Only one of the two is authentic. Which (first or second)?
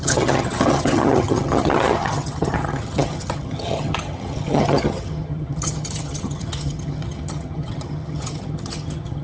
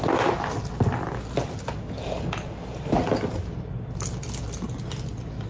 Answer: second